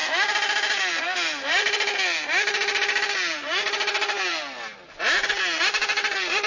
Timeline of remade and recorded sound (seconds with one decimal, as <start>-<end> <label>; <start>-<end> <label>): 0.0-6.5 recorded